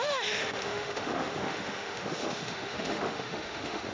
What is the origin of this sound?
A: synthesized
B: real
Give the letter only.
A